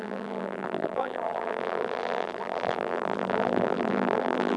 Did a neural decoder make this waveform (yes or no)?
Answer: yes